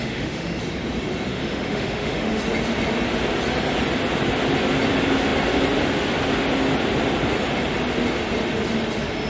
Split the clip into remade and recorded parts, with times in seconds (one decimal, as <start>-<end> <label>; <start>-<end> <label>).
0.0-0.6 remade; 0.6-1.3 recorded; 1.3-2.4 remade; 2.4-9.3 recorded